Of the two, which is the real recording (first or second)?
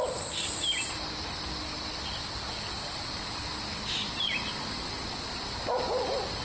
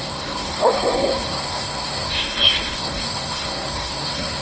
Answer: first